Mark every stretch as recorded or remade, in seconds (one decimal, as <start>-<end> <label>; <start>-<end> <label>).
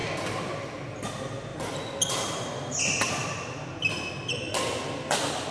0.0-5.5 recorded